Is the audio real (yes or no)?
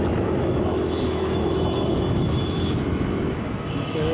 no